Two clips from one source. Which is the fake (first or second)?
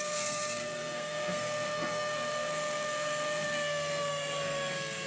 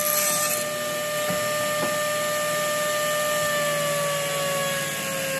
first